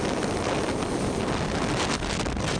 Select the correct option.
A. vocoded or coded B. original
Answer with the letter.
B